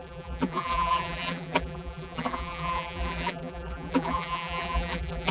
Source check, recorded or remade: remade